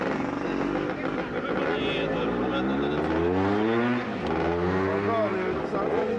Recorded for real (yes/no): yes